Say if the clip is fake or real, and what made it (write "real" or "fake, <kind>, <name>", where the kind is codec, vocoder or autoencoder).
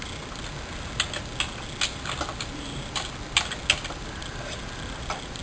real